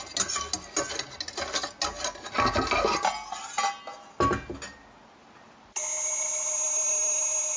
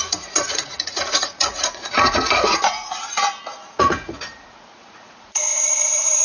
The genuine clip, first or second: first